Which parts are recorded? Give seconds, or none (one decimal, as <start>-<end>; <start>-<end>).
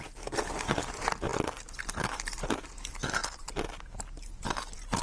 0.0-3.2; 4.0-5.0